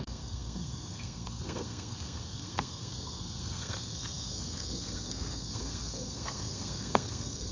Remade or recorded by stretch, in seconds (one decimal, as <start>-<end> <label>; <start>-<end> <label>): 0.0-7.5 remade